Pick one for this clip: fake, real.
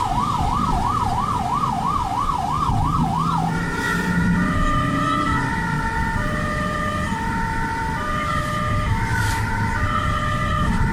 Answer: fake